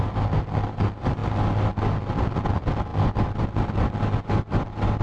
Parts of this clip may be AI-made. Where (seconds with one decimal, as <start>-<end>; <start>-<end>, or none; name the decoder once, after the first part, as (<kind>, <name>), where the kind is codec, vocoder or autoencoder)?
none